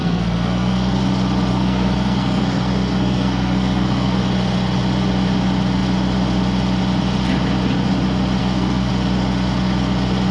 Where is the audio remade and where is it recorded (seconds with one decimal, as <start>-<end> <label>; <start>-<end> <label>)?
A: 0.0-1.0 remade; 1.0-1.5 recorded; 1.5-4.2 remade; 4.2-8.4 recorded; 8.4-8.9 remade; 8.9-10.3 recorded